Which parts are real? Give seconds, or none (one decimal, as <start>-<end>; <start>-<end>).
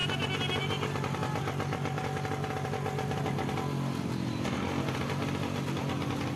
0.0-6.4